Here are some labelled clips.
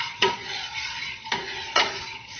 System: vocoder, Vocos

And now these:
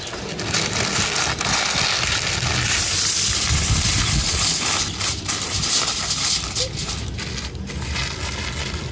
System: none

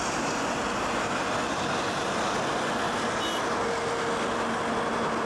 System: none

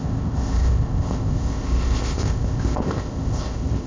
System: codec, ZipCodec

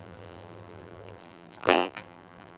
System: vocoder, BigVGAN v2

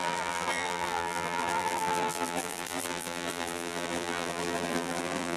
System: vocoder, BigVGAN v2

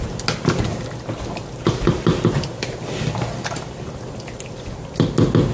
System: none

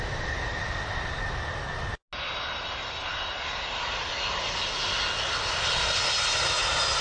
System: none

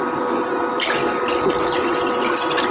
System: none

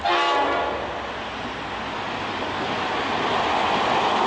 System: none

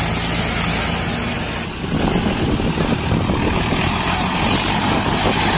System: none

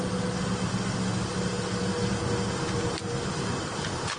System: none